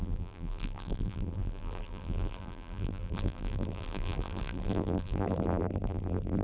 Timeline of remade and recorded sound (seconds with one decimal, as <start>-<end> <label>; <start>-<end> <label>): 0.0-6.4 remade